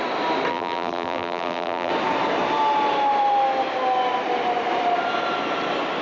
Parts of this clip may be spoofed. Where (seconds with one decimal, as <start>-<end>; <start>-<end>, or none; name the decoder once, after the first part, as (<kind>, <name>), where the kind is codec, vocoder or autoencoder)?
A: 0.5-1.9 (vocoder, BigVGAN v2)